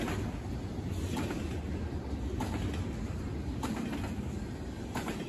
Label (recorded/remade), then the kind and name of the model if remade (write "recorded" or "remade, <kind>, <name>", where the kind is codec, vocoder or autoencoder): recorded